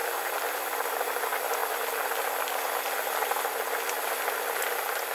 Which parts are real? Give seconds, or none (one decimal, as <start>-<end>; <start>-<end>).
0.0-5.1